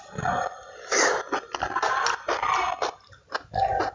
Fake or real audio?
real